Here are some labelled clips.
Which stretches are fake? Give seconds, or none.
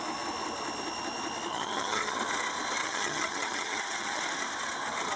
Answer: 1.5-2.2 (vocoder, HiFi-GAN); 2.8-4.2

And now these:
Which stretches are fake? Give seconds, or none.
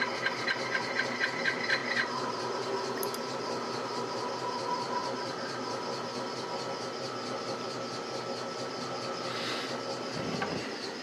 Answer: none